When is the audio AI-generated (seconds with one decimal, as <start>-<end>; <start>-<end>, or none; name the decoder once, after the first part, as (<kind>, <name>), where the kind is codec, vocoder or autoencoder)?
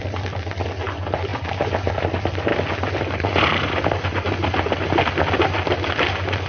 1.3-1.9 (vocoder, BigVGAN v2)